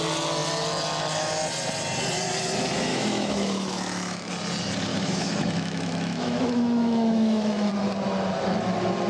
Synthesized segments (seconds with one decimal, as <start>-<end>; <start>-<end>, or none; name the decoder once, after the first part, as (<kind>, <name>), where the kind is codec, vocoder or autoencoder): 2.9-4.3 (autoencoder, DAC-VAE); 4.9-7.7